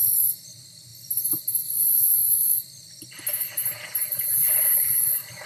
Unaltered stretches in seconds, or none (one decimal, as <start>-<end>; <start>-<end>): 0.0-3.6